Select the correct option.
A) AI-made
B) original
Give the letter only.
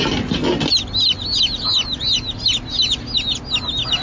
B